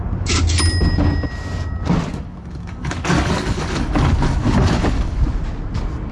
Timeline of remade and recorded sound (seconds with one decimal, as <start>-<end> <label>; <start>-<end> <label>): 0.0-2.1 recorded; 2.1-5.2 remade; 5.2-6.1 recorded